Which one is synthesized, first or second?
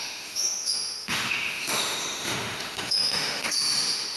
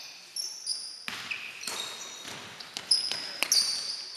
first